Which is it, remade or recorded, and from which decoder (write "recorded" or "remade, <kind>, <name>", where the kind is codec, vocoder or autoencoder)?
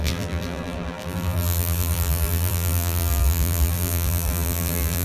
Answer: remade, vocoder, BigVGAN v2